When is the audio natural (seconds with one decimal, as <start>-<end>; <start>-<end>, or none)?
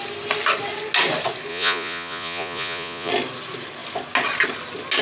0.0-1.5; 3.1-5.0